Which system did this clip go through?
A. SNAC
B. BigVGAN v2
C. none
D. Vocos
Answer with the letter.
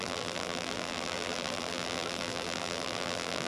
B